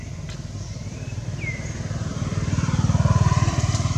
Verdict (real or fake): fake